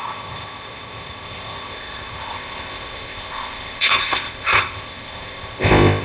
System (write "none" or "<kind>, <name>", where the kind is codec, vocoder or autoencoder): codec, ZipCodec